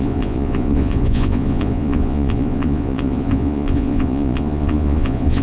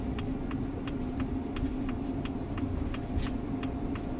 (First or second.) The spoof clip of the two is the first